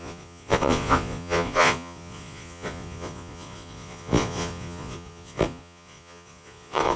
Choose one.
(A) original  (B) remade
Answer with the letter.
B